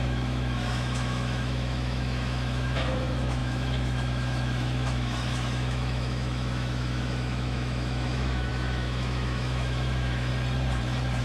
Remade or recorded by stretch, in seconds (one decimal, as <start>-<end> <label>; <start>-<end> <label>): 0.0-10.3 remade; 10.3-11.2 recorded